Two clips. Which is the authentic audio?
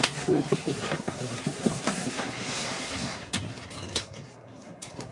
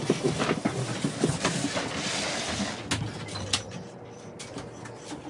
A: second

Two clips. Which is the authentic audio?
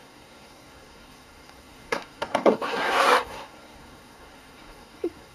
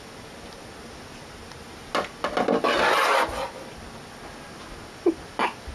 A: second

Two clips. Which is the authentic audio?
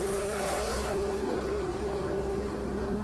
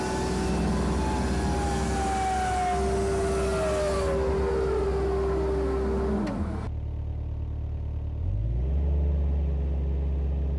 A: second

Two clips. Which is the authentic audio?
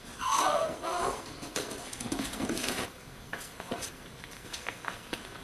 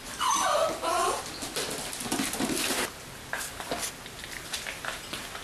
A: second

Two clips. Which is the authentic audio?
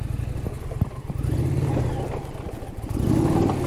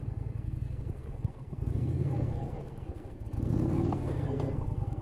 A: first